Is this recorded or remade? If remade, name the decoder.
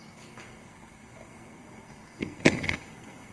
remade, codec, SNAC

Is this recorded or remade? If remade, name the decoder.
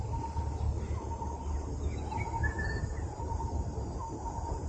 recorded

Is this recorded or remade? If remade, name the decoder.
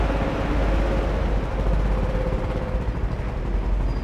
recorded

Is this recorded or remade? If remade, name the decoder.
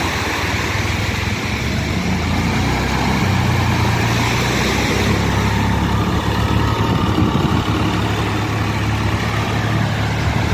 recorded